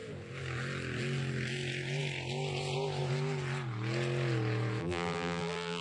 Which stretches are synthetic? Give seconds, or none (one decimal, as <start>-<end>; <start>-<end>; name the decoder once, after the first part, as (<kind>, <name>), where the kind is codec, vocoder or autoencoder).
4.8-5.8 (vocoder, BigVGAN v2)